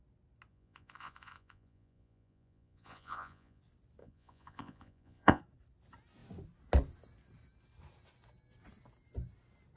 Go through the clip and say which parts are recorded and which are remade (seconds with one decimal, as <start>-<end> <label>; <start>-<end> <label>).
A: 0.0-0.5 recorded; 0.5-3.6 remade; 3.6-4.0 recorded; 4.0-5.4 remade; 5.4-9.8 recorded